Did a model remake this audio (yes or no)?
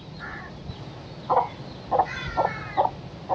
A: no